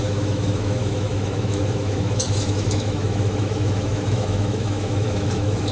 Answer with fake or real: fake